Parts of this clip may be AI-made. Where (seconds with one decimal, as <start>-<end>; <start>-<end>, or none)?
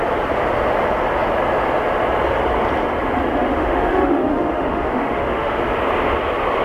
3.5-5.6